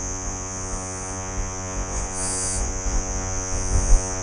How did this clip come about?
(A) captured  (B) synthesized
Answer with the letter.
B